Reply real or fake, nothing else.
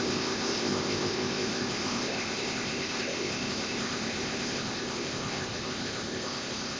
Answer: fake